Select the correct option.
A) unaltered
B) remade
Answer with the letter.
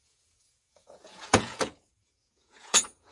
B